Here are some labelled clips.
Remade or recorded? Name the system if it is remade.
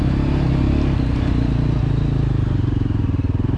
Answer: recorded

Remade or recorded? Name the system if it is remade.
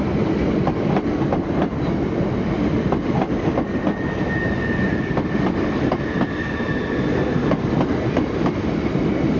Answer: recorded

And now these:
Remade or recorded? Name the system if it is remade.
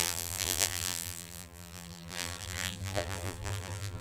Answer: remade, vocoder, BigVGAN v2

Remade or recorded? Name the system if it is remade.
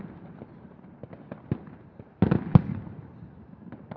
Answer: recorded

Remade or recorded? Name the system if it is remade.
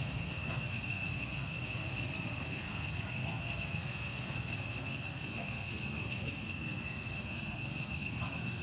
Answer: remade, codec, SNAC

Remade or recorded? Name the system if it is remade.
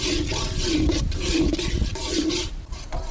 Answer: recorded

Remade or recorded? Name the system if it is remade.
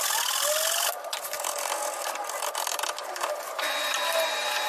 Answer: recorded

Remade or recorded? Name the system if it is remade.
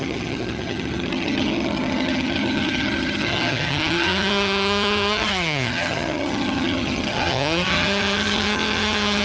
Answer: remade, vocoder, HiFi-GAN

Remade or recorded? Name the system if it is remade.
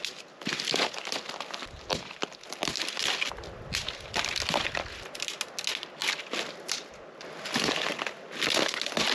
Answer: recorded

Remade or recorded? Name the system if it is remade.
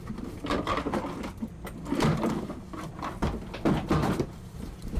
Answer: remade, vocoder, BigVGAN v2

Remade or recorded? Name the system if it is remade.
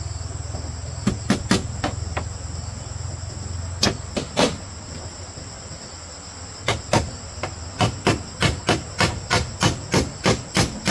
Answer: recorded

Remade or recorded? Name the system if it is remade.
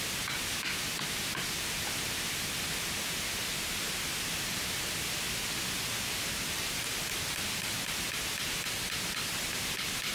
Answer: recorded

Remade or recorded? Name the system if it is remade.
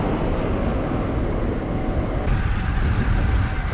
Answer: recorded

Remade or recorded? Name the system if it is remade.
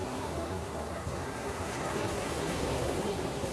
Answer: remade, codec, SNAC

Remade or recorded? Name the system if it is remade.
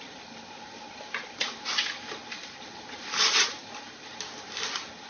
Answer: recorded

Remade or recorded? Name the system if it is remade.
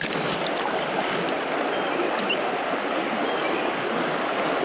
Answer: recorded